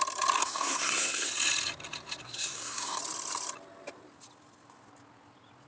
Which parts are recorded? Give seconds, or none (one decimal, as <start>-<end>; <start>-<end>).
0.0-0.4; 1.3-2.2; 3.0-5.7